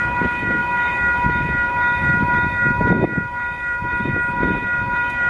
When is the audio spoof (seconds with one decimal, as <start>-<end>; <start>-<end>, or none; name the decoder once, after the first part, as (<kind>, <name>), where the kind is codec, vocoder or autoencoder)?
0.0-5.3 (autoencoder, DAC-VAE)